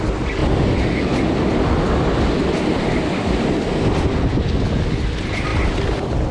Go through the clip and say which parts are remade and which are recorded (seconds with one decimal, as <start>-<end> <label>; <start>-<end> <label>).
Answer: 0.0-6.3 recorded